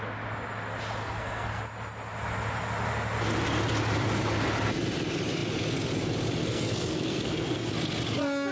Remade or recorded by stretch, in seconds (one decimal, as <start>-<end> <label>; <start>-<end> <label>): 0.0-1.0 recorded; 1.0-1.6 remade; 1.6-6.4 recorded; 6.4-7.7 remade; 7.7-8.5 recorded